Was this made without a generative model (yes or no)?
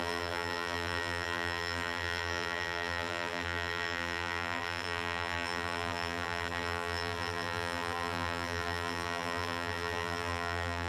no